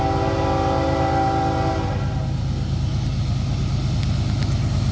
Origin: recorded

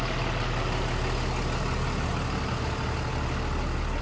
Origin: recorded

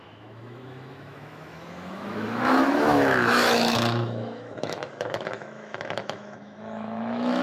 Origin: remade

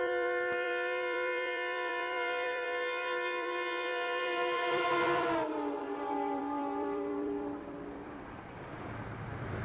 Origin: remade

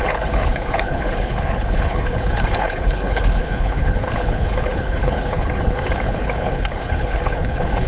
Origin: remade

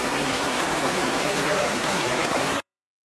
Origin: remade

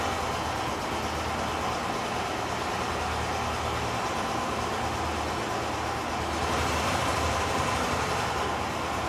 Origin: recorded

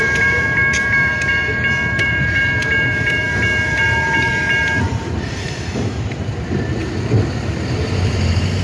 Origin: remade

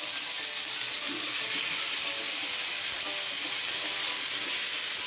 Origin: recorded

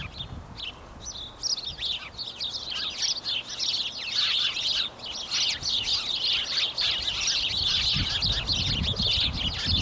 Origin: recorded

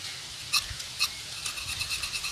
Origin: recorded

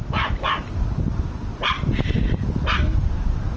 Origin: recorded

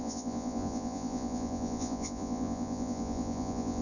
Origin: remade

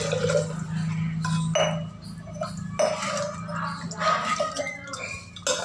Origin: recorded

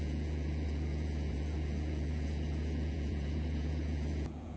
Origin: remade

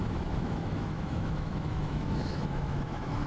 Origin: remade